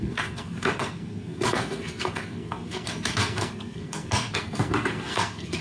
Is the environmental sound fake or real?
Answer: fake